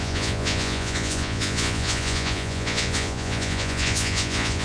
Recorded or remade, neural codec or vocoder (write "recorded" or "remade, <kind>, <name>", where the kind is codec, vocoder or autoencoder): remade, vocoder, Vocos